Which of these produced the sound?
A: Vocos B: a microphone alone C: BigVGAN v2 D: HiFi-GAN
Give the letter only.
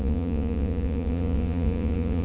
A